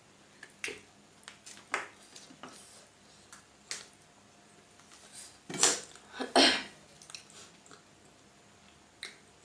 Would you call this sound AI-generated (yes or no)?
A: no